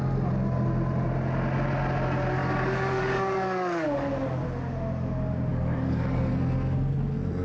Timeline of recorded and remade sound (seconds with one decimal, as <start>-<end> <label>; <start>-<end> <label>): 0.0-2.4 recorded; 2.4-4.1 remade; 4.1-5.5 recorded; 5.5-6.3 remade; 6.3-7.4 recorded